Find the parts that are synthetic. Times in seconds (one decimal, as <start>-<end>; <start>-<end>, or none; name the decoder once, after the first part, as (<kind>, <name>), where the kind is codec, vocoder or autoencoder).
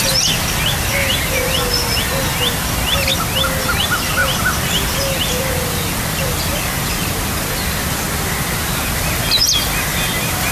none